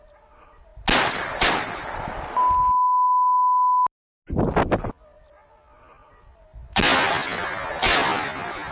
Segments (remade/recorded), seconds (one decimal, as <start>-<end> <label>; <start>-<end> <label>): 0.0-8.7 recorded